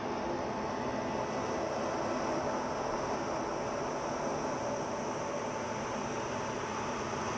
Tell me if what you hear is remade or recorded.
recorded